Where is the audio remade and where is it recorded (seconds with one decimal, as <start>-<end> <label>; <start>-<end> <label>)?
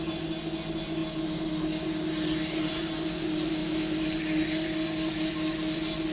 0.0-6.1 recorded